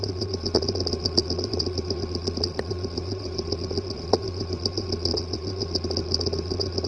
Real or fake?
fake